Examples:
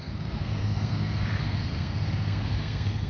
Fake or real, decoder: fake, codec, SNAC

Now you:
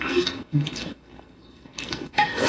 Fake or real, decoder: fake, codec, SNAC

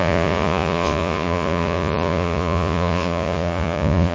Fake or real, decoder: fake, vocoder, Vocos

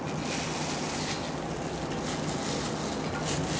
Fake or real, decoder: real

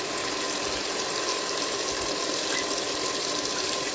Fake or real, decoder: real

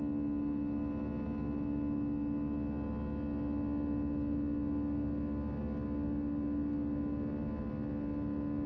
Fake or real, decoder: real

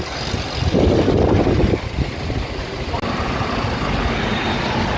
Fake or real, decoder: real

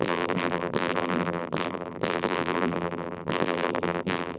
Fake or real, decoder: fake, vocoder, BigVGAN v2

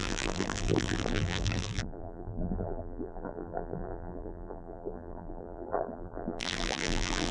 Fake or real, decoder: fake, vocoder, BigVGAN v2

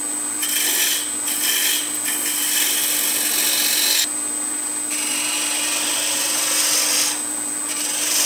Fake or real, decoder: real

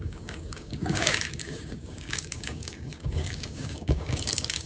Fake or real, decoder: fake, codec, DAC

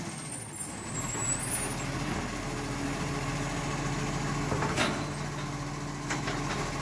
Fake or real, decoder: real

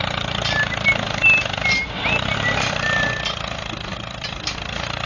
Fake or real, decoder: real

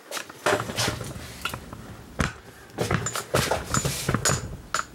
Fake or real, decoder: real